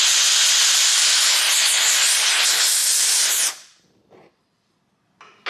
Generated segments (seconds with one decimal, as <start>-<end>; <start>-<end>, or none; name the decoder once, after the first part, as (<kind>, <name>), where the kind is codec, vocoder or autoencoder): 0.6-1.5 (vocoder, BigVGAN v2); 2.8-4.8